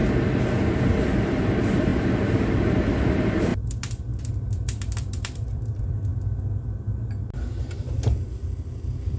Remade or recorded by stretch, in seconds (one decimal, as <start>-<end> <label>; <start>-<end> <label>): 0.0-0.6 recorded; 0.6-6.1 remade; 6.1-7.6 recorded; 7.6-9.2 remade